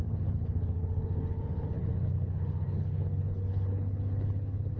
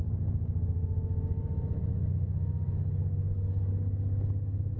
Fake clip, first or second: first